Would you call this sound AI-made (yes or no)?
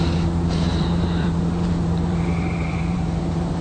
yes